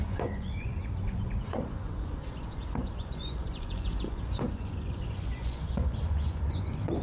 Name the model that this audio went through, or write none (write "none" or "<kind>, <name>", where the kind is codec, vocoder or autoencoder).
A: vocoder, Vocos